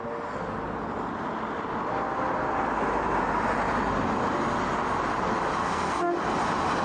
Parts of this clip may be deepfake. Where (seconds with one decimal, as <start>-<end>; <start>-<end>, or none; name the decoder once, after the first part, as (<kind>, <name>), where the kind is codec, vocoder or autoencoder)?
5.6-6.1 (codec, SNAC)